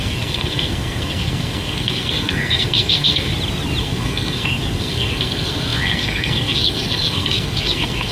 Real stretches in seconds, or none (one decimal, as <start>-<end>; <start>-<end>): 3.3-3.8

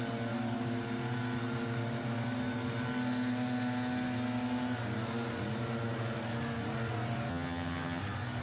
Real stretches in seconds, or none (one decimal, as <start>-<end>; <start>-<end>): 0.0-7.3; 8.0-8.4